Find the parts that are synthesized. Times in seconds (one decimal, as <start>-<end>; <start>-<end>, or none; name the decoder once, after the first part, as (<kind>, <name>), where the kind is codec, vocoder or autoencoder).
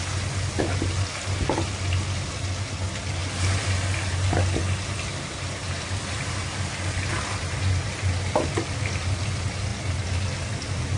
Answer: none